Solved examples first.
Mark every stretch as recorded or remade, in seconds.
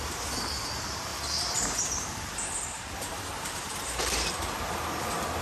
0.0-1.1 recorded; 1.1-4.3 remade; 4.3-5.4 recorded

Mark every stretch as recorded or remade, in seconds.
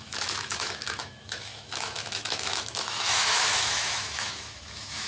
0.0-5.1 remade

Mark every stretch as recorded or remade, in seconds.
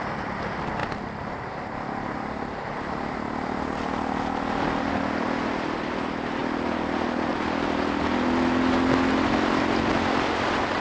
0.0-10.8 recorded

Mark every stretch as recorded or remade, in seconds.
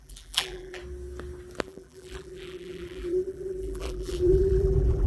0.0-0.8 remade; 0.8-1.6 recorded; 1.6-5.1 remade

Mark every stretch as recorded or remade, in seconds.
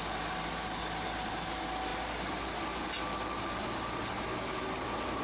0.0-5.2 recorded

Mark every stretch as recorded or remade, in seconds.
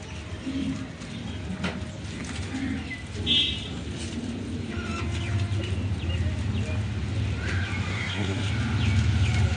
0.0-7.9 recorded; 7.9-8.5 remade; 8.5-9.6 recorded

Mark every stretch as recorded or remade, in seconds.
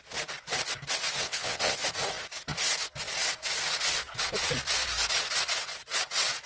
0.0-1.2 recorded; 1.2-1.8 remade; 1.8-6.5 recorded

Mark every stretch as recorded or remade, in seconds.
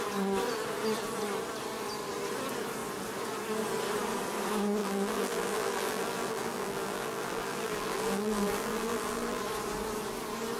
0.0-4.8 recorded; 4.8-9.4 remade; 9.4-10.6 recorded